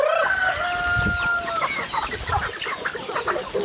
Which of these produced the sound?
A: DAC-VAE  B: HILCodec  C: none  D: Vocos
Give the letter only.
C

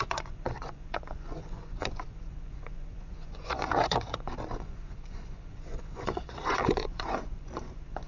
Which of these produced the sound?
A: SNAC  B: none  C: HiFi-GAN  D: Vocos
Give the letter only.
D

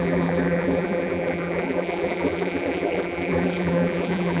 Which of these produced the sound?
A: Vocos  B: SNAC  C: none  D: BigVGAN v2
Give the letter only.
D